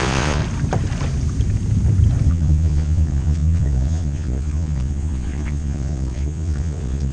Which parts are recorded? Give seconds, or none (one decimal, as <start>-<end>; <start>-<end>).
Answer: 0.4-2.3